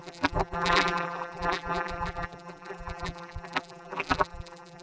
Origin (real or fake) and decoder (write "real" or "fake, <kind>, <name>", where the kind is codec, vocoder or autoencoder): fake, vocoder, BigVGAN v2